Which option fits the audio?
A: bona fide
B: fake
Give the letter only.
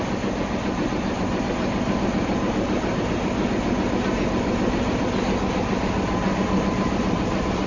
A